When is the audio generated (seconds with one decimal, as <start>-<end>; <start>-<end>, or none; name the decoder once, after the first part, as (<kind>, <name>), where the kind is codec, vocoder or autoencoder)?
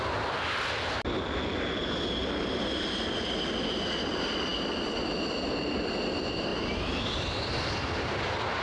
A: none